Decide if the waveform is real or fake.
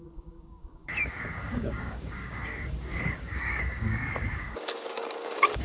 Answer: fake